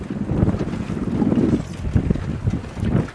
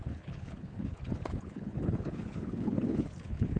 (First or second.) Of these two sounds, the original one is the first